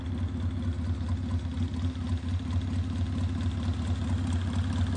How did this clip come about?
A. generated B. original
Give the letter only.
B